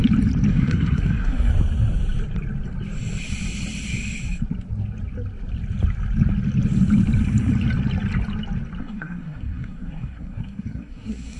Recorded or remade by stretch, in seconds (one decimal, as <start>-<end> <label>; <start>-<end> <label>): 0.0-0.5 recorded; 0.5-1.5 remade; 1.5-8.8 recorded; 8.8-11.4 remade